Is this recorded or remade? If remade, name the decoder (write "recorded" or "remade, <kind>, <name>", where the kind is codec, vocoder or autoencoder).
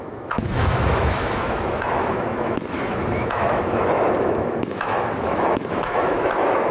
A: remade, autoencoder, DAC-VAE